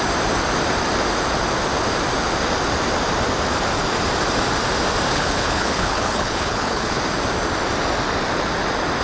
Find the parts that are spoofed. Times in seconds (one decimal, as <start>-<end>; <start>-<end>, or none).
5.1-7.0